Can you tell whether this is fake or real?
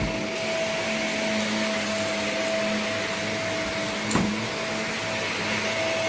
real